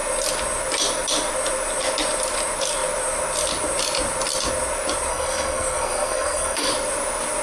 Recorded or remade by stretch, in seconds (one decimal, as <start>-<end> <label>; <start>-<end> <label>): 0.0-5.1 recorded; 5.1-6.7 remade; 6.7-7.4 recorded

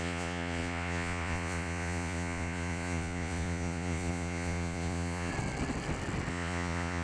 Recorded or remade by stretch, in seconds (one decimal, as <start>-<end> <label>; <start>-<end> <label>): 0.0-5.3 remade; 5.3-6.3 recorded; 6.3-7.0 remade

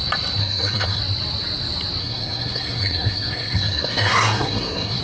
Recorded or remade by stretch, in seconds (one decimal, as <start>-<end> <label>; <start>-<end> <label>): 0.0-0.4 recorded; 0.4-1.0 remade; 1.0-2.0 recorded; 2.0-5.0 remade

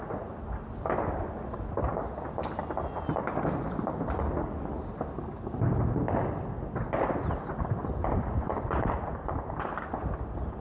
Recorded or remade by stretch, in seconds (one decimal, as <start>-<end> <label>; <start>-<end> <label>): 0.0-7.8 recorded; 7.8-10.6 remade

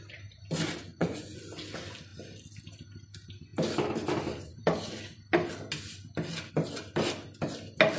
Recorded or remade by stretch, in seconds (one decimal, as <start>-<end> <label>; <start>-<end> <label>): 0.0-0.9 recorded; 0.9-1.4 remade; 1.4-8.0 recorded

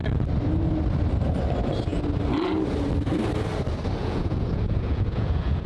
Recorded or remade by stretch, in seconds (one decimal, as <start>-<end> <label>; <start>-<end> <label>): 0.0-4.0 recorded; 4.0-5.7 remade

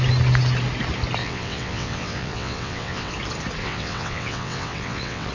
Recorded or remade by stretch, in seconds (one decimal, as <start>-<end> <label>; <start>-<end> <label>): 0.0-1.2 recorded; 1.2-3.1 remade; 3.1-3.6 recorded; 3.6-5.3 remade

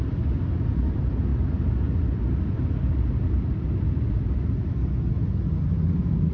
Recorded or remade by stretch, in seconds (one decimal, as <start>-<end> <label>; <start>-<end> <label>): 0.0-6.3 recorded